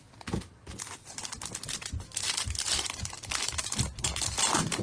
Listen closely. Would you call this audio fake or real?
real